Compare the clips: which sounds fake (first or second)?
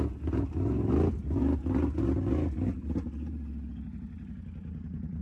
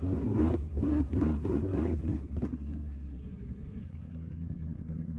second